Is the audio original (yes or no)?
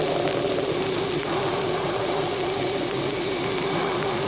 yes